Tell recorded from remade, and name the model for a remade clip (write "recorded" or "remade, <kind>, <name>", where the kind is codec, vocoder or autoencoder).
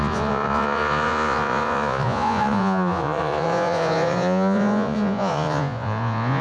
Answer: remade, vocoder, Vocos